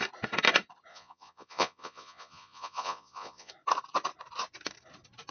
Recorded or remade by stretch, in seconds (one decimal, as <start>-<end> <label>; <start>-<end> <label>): 0.0-0.9 recorded; 0.9-3.5 remade; 3.5-5.3 recorded